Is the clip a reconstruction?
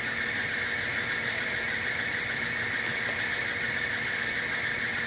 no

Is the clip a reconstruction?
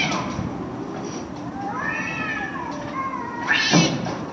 no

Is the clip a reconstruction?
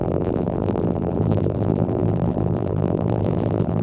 yes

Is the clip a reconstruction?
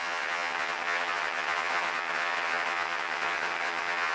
yes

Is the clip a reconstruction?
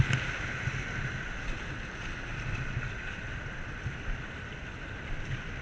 no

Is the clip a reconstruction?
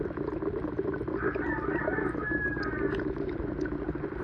no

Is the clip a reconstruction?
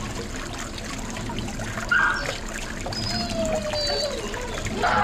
no